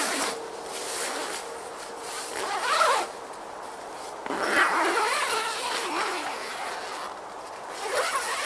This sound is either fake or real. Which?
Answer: real